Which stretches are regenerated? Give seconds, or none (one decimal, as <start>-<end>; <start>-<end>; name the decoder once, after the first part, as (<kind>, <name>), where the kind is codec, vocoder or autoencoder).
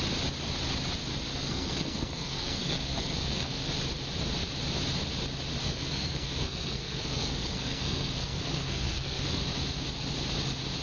1.3-3.7 (codec, SNAC); 5.6-9.4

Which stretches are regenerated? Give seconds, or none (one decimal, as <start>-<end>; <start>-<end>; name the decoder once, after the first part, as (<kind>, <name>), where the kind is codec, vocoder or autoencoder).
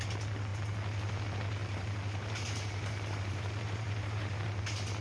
1.6-4.6 (vocoder, BigVGAN v2)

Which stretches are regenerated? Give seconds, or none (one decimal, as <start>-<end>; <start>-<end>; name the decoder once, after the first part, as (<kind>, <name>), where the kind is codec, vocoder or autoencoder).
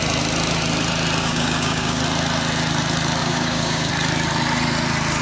1.2-2.0 (codec, DAC); 3.2-3.9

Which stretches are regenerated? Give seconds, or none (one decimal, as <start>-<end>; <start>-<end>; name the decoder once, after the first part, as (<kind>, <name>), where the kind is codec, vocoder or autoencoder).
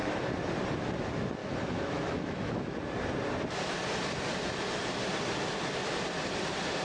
1.4-2.8 (autoencoder, DAC-VAE)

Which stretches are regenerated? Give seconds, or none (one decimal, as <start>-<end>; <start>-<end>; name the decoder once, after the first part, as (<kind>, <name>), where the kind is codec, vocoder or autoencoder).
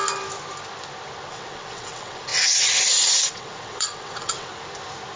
1.3-4.5 (vocoder, WaveNeXt)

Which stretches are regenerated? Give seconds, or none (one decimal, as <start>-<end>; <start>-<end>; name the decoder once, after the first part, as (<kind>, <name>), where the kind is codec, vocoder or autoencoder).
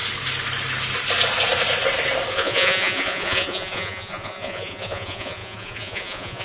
2.3-6.4 (vocoder, Vocos)